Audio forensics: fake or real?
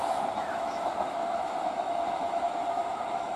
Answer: fake